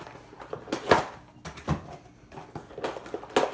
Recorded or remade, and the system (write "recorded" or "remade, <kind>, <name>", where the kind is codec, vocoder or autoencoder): recorded